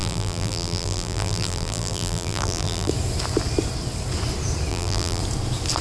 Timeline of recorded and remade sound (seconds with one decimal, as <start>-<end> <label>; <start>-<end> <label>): 0.0-2.9 remade; 2.9-4.7 recorded; 4.7-5.2 remade; 5.2-5.8 recorded